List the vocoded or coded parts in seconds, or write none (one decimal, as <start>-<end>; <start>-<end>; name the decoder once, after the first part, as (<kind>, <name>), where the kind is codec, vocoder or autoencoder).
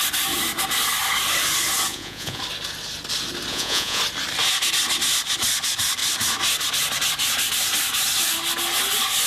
1.9-2.4 (vocoder, Vocos); 3.5-4.0